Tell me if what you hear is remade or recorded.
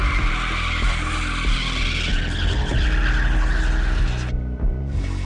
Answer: recorded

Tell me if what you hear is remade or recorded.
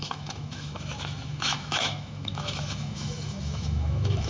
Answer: remade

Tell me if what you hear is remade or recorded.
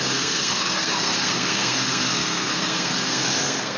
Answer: remade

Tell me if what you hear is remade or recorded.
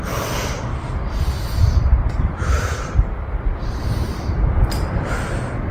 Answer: remade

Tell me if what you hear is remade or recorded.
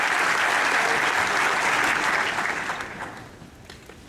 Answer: recorded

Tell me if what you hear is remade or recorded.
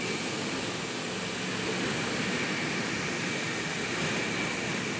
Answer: recorded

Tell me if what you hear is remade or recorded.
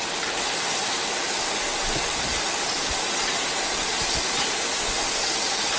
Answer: recorded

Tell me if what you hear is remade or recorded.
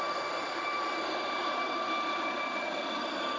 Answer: remade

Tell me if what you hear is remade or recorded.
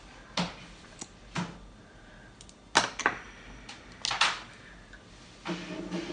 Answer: recorded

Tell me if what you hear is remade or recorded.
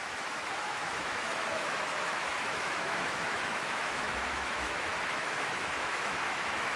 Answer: remade